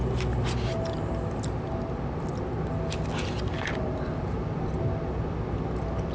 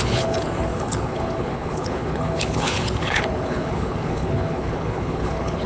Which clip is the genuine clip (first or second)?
first